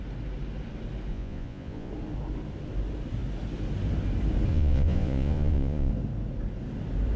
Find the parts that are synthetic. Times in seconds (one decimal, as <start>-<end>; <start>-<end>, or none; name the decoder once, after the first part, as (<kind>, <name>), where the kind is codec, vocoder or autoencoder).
1.1-1.9 (vocoder, Vocos); 4.5-5.9